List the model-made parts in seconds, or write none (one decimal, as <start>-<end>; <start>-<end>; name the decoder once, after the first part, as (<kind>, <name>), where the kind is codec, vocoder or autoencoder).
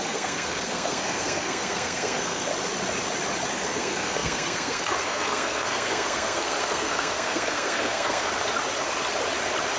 0.0-2.5 (codec, SNAC); 3.5-8.3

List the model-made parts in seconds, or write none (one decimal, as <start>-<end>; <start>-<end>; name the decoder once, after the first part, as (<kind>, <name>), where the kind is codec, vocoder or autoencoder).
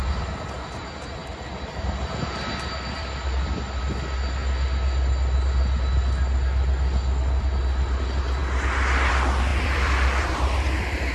1.2-3.8 (vocoder, BigVGAN v2); 9.5-11.1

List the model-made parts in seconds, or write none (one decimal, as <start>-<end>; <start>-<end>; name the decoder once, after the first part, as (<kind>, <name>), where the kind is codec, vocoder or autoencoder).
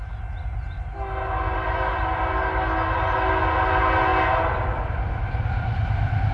none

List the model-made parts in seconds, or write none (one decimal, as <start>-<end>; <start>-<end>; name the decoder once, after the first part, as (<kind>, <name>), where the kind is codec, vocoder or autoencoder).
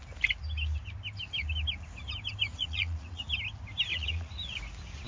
2.5-3.2 (vocoder, Vocos); 3.9-4.6